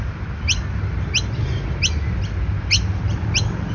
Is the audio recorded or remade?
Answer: recorded